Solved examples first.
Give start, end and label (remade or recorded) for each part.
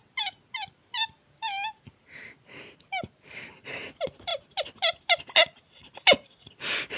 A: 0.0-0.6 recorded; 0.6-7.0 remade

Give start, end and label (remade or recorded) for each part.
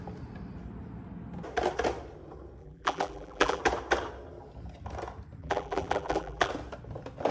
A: 0.0-2.6 recorded; 2.6-3.6 remade; 3.6-5.4 recorded; 5.4-6.5 remade; 6.5-7.3 recorded